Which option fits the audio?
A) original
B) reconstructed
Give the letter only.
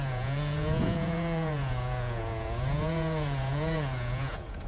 B